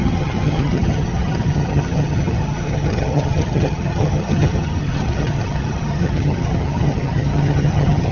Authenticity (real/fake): fake